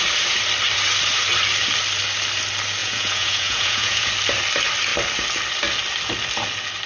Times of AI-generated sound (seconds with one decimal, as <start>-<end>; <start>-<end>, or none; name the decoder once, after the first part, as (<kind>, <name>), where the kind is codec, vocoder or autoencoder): 2.8-4.1 (vocoder, Vocos)